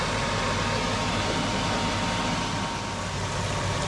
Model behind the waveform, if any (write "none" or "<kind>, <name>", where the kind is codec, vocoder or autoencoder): none